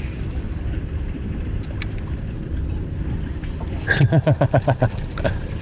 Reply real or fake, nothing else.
real